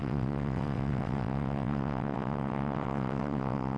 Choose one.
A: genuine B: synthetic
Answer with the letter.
B